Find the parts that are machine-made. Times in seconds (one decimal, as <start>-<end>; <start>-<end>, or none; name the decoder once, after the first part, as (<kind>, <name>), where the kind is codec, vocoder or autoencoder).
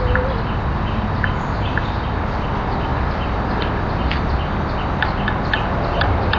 none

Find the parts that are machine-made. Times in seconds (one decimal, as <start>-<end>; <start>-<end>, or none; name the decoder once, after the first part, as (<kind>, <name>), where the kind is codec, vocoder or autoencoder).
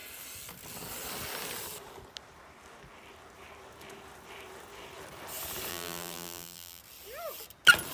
5.7-6.8 (vocoder, BigVGAN v2)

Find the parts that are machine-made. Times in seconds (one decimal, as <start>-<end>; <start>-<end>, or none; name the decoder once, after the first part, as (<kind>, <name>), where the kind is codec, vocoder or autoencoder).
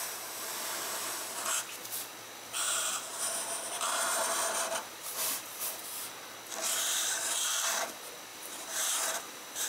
3.1-6.1 (vocoder, BigVGAN v2); 8.3-9.7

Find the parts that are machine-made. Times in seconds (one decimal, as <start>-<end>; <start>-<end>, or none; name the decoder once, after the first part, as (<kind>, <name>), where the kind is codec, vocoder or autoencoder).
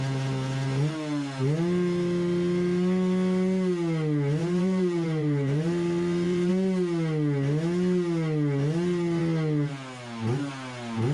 4.4-6.5 (vocoder, BigVGAN v2)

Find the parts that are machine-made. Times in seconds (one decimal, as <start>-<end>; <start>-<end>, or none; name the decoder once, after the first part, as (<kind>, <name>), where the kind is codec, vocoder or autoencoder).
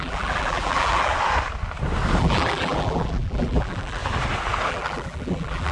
0.0-1.1 (vocoder, BigVGAN v2); 2.2-4.0; 4.7-5.7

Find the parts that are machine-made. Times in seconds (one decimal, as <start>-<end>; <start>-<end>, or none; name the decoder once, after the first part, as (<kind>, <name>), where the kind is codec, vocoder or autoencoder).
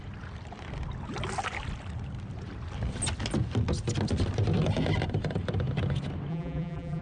6.3-7.0 (vocoder, BigVGAN v2)